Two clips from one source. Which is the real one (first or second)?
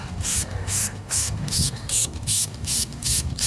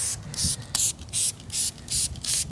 second